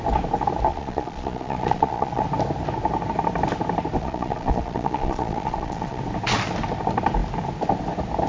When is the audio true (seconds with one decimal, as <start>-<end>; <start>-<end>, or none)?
0.0-0.7; 2.2-4.0; 6.0-8.3